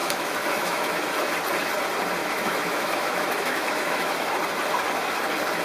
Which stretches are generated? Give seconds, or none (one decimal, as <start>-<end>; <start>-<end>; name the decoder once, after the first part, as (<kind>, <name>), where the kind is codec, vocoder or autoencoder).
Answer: 0.0-1.3 (autoencoder, DAC-VAE); 2.2-4.4